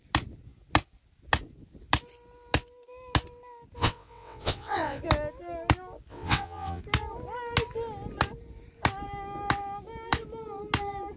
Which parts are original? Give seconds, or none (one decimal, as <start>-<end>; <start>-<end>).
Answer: 0.0-3.8; 5.0-6.1; 6.8-11.2